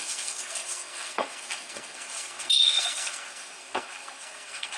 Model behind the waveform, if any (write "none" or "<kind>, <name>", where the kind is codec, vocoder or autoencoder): codec, SNAC